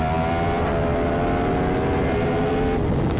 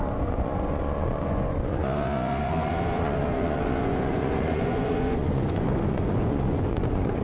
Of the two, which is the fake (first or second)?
second